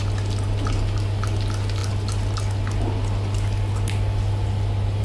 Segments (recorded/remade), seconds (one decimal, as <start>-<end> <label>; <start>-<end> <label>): 0.0-5.0 recorded